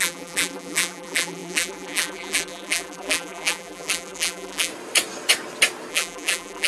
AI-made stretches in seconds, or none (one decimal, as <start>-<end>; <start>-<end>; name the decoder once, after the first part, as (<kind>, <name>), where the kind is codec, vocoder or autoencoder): 0.0-4.7 (vocoder, BigVGAN v2); 5.9-6.7